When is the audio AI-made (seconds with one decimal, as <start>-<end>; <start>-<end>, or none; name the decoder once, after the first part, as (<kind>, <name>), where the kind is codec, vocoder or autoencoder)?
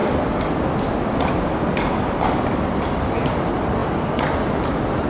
3.1-3.8 (vocoder, BigVGAN v2); 4.4-5.1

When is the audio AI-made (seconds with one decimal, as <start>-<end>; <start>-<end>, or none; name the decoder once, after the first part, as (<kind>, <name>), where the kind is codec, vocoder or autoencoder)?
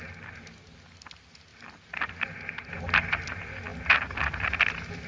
1.5-2.1 (vocoder, BigVGAN v2)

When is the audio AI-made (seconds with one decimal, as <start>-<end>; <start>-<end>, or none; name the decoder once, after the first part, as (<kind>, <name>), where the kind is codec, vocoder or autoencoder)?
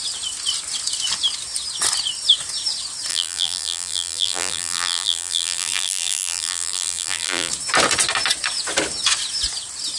3.1-7.5 (vocoder, BigVGAN v2)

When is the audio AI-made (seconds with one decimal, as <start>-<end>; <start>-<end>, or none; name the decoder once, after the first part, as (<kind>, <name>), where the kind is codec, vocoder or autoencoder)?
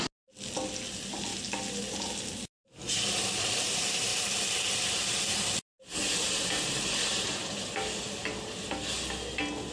none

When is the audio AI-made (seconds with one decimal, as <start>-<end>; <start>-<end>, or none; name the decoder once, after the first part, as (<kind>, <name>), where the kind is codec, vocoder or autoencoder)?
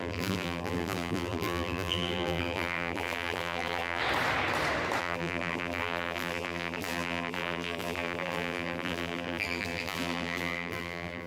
0.0-4.0 (vocoder, BigVGAN v2); 5.0-11.3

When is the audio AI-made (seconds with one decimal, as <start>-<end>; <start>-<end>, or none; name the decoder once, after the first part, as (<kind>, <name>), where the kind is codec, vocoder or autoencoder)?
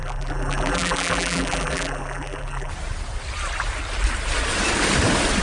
0.0-2.7 (vocoder, BigVGAN v2)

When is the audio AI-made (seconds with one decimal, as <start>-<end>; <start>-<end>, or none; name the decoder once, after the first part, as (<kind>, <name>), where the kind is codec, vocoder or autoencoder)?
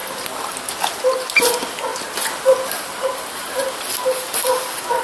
none